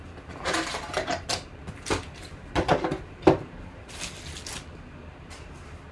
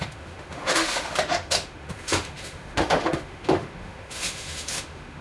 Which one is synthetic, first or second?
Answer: second